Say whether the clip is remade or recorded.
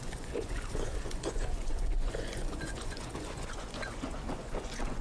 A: remade